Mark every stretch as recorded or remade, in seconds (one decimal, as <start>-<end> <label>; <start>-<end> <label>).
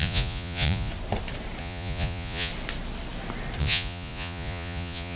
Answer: 0.0-0.9 remade; 0.9-1.6 recorded; 1.6-2.5 remade; 2.5-3.6 recorded; 3.6-5.2 remade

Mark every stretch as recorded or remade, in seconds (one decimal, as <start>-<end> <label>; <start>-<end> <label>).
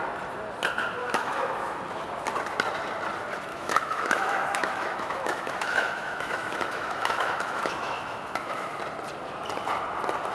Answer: 0.0-1.0 recorded; 1.0-1.8 remade; 1.8-3.5 recorded; 3.5-8.8 remade; 8.8-10.3 recorded